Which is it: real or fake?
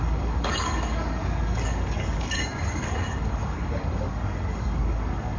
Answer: fake